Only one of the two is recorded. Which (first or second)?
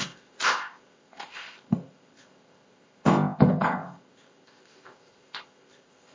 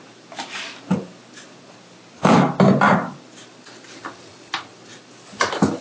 second